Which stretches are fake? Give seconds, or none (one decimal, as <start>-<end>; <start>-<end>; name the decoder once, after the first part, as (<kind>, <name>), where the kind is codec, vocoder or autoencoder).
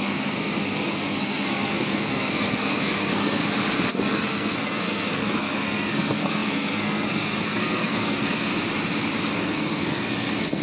0.0-3.4 (codec, SNAC); 3.9-8.5; 9.3-10.6